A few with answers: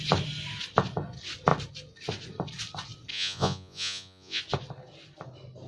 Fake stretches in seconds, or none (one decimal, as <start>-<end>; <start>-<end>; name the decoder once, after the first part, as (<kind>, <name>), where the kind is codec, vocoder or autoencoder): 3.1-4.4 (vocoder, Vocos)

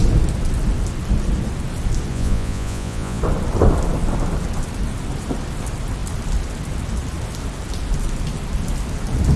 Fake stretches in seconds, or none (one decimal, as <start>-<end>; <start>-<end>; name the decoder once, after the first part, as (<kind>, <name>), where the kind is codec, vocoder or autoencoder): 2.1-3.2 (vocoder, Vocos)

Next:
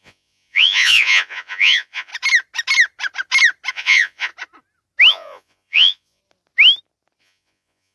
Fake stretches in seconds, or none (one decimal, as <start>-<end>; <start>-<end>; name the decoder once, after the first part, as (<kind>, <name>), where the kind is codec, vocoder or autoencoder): 0.0-2.1 (vocoder, Vocos); 3.7-4.3; 5.1-6.2; 7.2-7.9